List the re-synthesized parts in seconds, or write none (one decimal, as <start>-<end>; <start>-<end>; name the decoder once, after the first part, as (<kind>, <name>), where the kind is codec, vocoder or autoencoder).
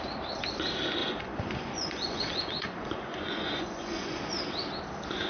1.0-4.2 (vocoder, Vocos)